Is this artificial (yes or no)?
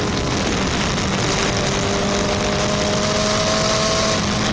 no